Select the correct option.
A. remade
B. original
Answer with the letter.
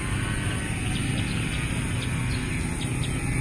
B